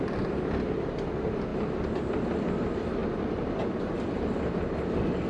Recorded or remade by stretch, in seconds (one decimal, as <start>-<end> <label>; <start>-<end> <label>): 0.0-1.5 remade; 1.5-2.5 recorded; 2.5-3.0 remade; 3.0-3.8 recorded; 3.8-5.3 remade